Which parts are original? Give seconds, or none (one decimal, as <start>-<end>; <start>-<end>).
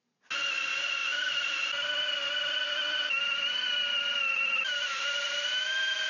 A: 0.0-1.0; 1.6-6.1